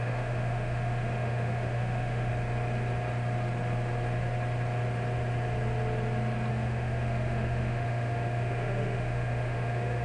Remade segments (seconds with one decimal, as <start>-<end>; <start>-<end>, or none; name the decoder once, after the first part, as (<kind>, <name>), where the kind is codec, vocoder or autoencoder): 0.0-2.3 (autoencoder, DAC-VAE); 6.5-10.0